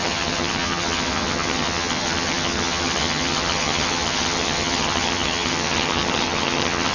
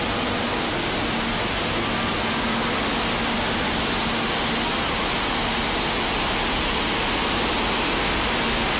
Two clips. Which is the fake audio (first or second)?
first